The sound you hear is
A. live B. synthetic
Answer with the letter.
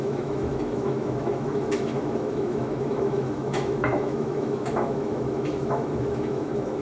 B